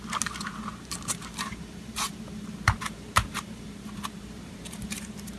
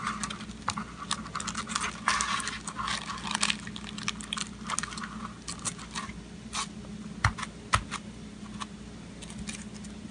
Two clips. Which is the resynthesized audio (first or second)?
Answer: first